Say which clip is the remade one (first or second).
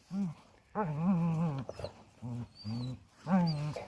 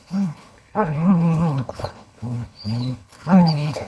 second